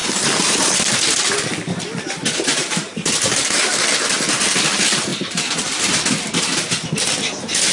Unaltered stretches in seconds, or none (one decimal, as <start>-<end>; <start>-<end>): 1.3-2.6; 3.8-5.1; 5.9-7.7